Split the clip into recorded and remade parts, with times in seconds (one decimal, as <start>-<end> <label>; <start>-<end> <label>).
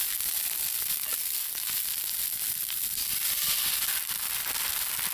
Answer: 0.0-5.1 recorded